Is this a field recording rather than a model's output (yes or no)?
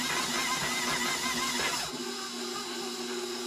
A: yes